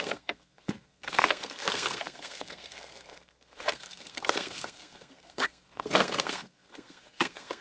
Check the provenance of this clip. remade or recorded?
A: remade